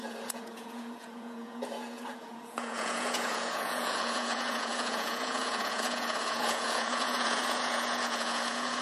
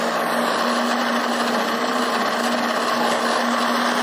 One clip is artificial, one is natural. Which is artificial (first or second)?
first